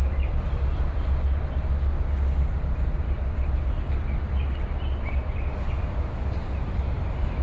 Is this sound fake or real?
real